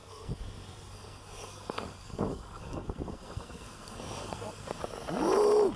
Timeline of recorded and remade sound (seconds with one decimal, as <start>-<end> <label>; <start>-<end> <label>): 0.0-4.8 remade; 4.8-5.8 recorded